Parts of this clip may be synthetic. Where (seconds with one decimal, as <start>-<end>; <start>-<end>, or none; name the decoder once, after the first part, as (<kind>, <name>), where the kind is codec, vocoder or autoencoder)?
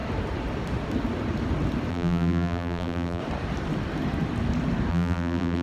1.9-3.2 (vocoder, BigVGAN v2); 4.9-5.6